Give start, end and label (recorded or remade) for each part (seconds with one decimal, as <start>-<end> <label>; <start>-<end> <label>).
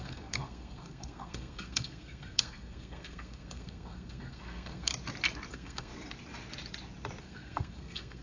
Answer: 0.0-4.9 remade; 4.9-5.5 recorded; 5.5-5.9 remade; 5.9-7.2 recorded; 7.2-8.2 remade